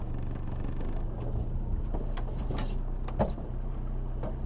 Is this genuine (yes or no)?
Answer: yes